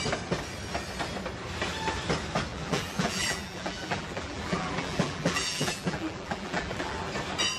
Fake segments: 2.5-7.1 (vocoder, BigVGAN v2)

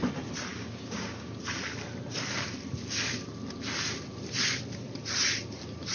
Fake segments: 0.5-1.4 (codec, DAC)

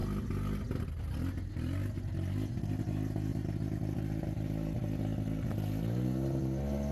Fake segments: none

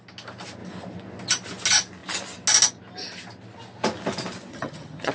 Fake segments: 4.5-5.1 (vocoder, HiFi-GAN)

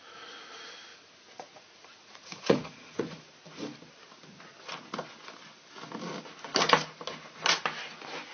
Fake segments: 0.9-3.2 (vocoder, Vocos)

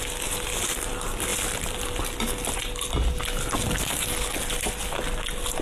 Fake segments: none

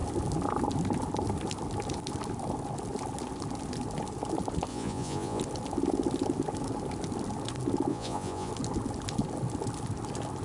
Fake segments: 4.7-5.4 (vocoder, Vocos); 7.9-8.5